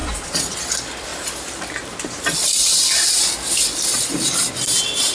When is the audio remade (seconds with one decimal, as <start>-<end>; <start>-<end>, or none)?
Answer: 0.0-0.6